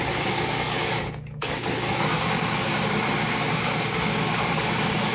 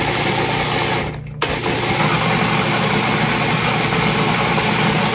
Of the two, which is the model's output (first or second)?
first